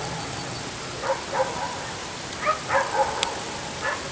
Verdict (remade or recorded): recorded